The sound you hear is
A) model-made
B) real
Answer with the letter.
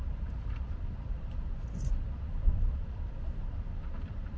A